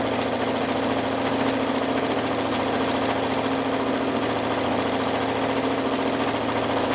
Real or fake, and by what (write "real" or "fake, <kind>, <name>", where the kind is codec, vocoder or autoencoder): real